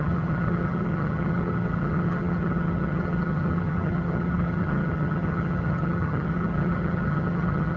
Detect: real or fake fake